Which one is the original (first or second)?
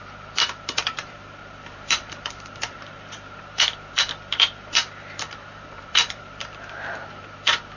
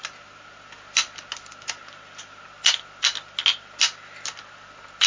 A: second